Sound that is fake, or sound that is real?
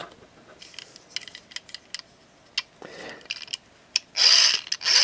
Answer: real